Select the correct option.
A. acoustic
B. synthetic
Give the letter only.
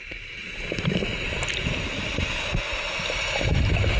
A